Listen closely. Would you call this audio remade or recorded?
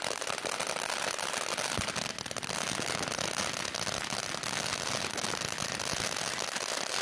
recorded